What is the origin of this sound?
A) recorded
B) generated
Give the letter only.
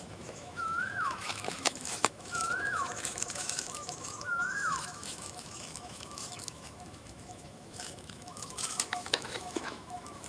B